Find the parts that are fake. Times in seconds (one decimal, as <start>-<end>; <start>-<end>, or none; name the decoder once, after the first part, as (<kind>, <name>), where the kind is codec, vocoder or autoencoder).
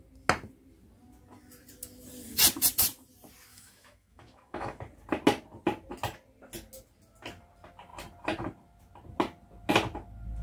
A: 3.5-4.8 (autoencoder, DAC-VAE)